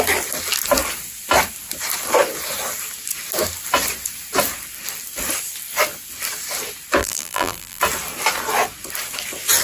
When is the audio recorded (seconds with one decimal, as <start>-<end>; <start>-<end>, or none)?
0.0-7.0; 7.8-9.6